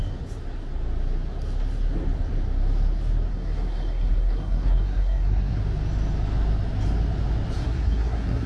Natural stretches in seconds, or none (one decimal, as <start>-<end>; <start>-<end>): 0.0-3.3; 5.6-7.6

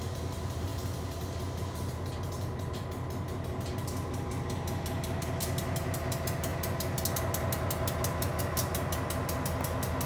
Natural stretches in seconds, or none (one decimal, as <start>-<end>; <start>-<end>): 0.0-10.1

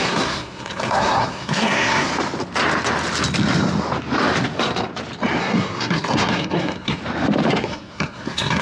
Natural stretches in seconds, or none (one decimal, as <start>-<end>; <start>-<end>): 2.1-5.4; 7.0-7.5